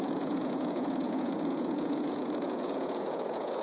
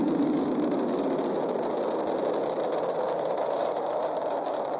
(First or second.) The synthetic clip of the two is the first